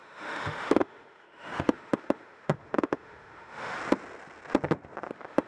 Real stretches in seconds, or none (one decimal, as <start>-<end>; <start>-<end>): 3.8-5.1